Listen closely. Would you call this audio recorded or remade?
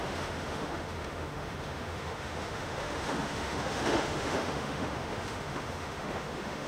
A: remade